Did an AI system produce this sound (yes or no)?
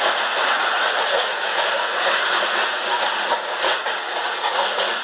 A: yes